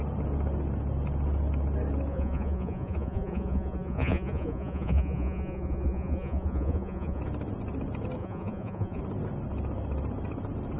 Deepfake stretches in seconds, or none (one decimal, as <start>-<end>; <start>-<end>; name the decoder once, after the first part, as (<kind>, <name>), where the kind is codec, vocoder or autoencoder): 2.1-7.2 (vocoder, Vocos); 8.2-9.0